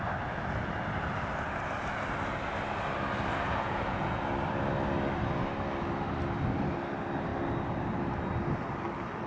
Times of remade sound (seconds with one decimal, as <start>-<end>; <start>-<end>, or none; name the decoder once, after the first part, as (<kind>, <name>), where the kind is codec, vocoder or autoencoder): 3.3-4.2 (vocoder, Vocos)